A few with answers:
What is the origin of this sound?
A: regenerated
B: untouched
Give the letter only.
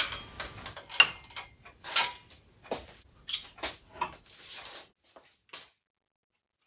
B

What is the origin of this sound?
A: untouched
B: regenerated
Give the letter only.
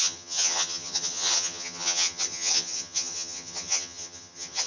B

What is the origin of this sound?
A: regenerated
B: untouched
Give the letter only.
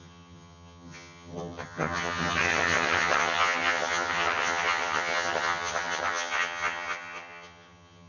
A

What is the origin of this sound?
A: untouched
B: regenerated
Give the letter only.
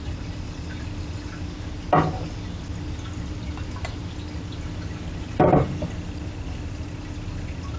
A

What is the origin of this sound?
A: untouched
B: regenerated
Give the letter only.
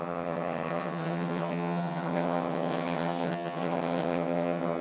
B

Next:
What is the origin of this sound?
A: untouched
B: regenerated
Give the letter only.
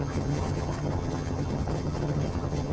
B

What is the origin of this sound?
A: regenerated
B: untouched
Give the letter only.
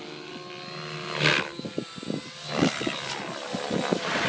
B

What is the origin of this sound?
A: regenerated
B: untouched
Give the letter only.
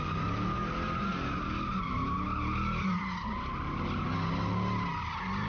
B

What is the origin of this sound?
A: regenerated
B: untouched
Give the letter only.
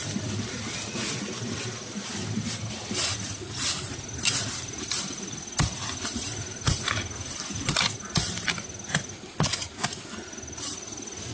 B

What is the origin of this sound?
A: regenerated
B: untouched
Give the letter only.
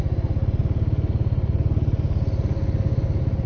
B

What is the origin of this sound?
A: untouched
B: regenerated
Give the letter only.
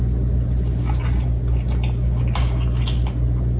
A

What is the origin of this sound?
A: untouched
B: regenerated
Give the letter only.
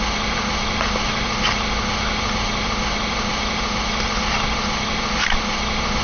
A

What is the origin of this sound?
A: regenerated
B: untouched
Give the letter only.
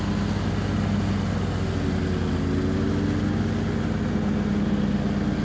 B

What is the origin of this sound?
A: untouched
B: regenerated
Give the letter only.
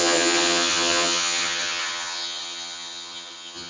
B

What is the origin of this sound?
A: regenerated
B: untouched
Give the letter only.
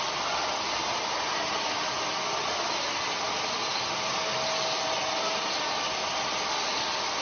B